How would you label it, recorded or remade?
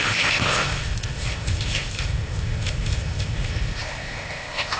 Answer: remade